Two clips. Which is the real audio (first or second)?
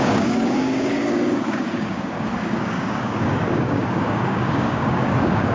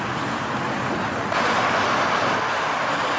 second